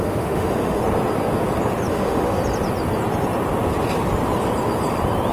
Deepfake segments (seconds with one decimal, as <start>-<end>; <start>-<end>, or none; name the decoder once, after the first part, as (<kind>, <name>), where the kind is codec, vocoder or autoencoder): 0.0-0.8 (autoencoder, DAC-VAE); 1.9-2.4